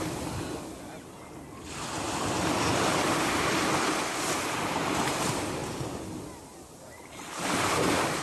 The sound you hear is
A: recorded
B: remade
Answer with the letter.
A